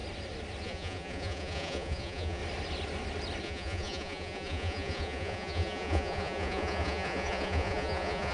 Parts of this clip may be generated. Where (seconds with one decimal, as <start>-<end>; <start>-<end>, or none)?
0.6-2.4; 3.4-8.3